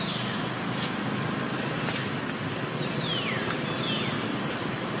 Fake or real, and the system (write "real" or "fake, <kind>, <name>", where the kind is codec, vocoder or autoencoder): real